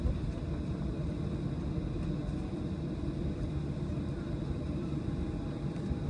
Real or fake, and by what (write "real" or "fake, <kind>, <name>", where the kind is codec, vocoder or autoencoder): real